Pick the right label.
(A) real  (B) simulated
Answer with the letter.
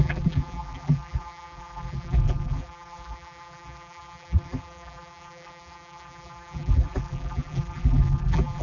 B